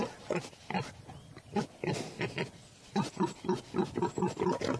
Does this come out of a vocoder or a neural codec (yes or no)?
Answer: no